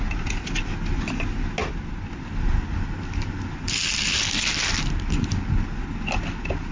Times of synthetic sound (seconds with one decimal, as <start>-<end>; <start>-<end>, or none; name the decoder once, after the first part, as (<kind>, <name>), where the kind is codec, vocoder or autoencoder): none